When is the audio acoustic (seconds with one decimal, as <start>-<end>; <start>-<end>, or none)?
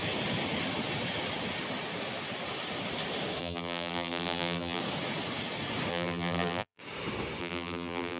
0.0-3.4; 4.8-5.9; 6.8-7.4